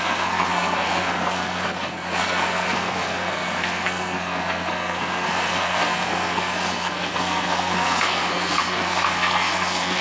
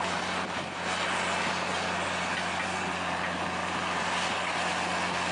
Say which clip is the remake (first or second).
first